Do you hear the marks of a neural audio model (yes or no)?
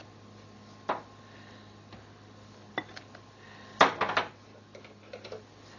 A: no